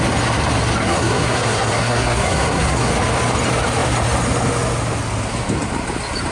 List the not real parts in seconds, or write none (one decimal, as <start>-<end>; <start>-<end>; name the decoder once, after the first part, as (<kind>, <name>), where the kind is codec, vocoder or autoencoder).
0.8-2.9 (codec, SNAC)